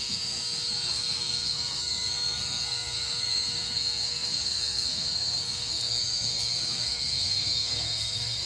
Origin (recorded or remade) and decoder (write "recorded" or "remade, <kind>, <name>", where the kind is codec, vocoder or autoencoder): remade, codec, SNAC